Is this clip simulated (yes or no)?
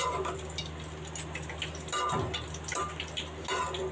no